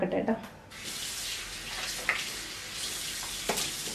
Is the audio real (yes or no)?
yes